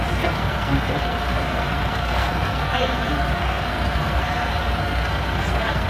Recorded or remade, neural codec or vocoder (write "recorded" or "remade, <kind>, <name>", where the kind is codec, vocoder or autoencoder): remade, codec, SNAC